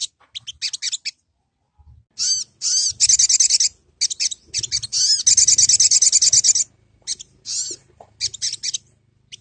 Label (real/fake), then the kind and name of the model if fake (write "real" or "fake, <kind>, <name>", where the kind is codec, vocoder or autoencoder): real